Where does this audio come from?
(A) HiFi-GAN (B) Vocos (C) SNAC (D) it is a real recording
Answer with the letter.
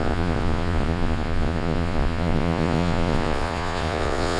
B